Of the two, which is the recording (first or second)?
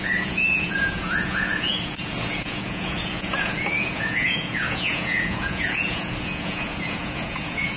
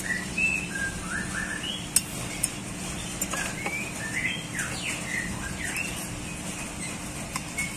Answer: second